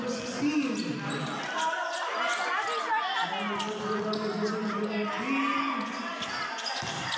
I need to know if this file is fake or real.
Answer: real